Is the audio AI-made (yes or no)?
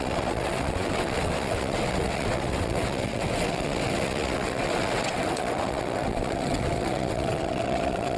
yes